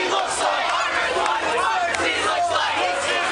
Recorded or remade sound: recorded